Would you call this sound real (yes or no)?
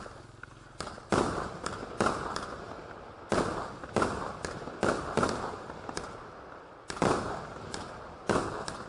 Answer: yes